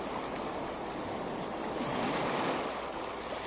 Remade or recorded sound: recorded